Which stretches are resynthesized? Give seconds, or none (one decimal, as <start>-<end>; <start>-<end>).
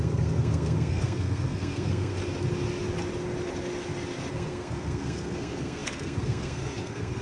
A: 0.0-2.1; 4.3-7.2